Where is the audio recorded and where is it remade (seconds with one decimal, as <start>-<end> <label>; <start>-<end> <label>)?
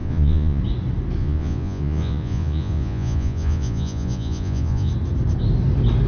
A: 0.0-0.6 remade; 0.6-1.2 recorded; 1.2-4.9 remade; 4.9-6.1 recorded